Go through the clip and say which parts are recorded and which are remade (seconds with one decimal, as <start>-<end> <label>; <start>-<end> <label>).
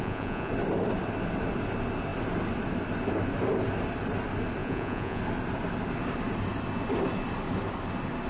0.0-0.5 remade; 0.5-4.6 recorded; 4.6-5.2 remade; 5.2-8.3 recorded